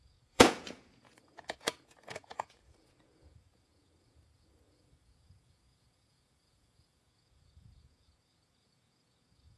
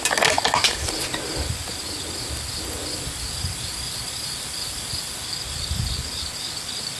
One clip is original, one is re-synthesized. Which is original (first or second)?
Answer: second